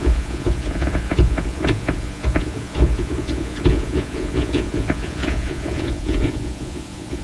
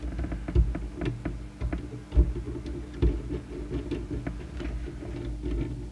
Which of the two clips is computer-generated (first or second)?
first